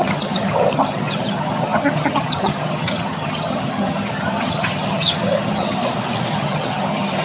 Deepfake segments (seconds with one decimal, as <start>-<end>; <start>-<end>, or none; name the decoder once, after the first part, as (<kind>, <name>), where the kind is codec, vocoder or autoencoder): 0.0-5.8 (vocoder, HiFi-GAN); 6.3-7.2